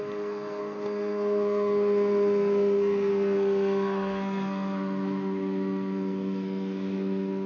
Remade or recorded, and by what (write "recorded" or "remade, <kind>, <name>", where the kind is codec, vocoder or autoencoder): remade, codec, SNAC